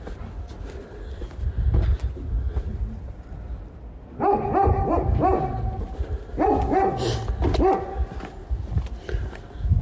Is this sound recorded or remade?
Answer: recorded